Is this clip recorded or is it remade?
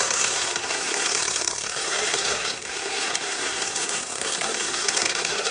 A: remade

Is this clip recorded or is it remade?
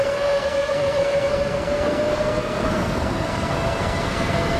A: remade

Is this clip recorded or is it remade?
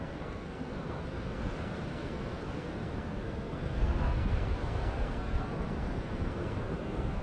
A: remade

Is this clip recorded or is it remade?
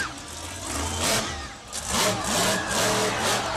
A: recorded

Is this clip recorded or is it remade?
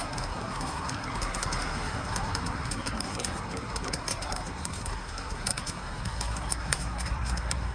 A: remade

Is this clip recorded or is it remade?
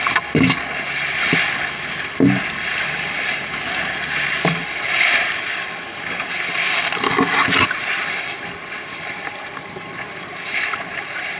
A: recorded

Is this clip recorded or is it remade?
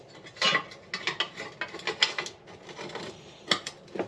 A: recorded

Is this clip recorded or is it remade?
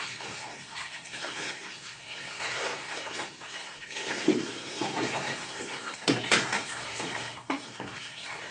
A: remade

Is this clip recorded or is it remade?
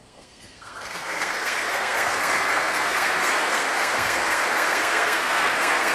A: remade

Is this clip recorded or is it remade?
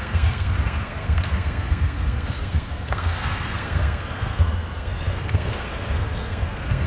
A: remade